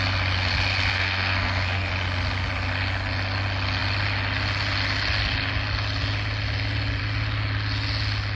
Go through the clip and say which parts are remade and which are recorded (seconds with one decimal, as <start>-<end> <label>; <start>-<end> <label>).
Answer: 0.0-0.9 recorded; 0.9-1.9 remade; 1.9-8.3 recorded